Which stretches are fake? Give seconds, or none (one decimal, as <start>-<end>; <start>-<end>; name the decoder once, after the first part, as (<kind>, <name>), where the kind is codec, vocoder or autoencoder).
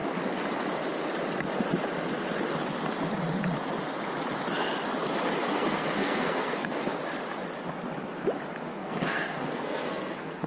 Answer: 5.4-7.0 (codec, SNAC); 8.7-10.5